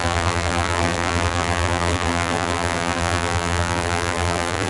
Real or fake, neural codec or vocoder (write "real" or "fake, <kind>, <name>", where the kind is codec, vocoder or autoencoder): fake, vocoder, BigVGAN v2